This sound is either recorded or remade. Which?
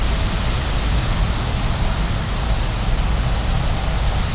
recorded